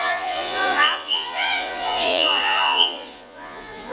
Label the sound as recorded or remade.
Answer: remade